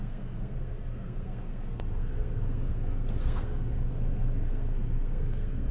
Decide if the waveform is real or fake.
fake